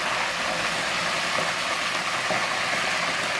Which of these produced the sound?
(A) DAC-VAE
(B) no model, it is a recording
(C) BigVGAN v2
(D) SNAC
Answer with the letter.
B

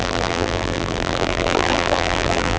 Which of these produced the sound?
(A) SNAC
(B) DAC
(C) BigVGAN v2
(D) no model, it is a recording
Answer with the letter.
C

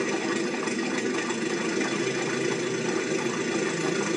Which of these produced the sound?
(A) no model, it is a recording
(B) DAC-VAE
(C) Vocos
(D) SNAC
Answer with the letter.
A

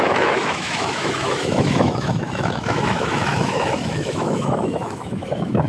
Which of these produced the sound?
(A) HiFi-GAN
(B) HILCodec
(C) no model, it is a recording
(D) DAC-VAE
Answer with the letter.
D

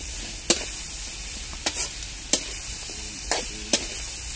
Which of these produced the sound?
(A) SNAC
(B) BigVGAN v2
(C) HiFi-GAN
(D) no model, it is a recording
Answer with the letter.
D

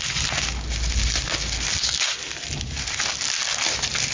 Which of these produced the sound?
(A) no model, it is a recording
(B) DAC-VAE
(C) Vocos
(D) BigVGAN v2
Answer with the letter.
A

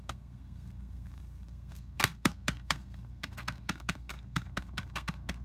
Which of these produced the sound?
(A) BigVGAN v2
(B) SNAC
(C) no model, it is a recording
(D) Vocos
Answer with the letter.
B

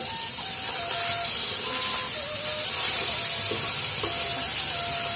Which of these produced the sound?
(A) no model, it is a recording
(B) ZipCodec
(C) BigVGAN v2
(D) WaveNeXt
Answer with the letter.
A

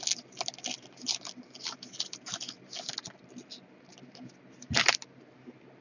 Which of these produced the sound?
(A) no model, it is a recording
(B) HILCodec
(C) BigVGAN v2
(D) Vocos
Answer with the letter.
A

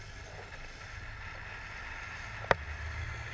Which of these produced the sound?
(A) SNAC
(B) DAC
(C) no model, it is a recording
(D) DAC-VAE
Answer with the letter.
C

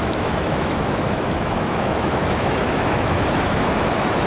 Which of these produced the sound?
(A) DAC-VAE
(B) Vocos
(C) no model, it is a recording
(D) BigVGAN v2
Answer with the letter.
A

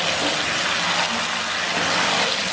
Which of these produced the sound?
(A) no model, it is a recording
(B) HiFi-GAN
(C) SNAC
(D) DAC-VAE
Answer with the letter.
A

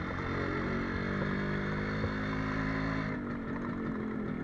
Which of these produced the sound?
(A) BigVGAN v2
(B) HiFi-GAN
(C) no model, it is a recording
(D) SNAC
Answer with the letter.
C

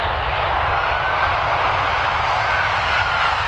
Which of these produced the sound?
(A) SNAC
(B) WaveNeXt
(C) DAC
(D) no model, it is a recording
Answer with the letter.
D